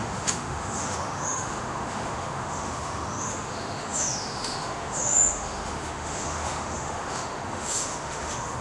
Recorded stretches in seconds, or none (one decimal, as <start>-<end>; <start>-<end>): none